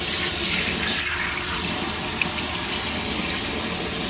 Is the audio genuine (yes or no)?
yes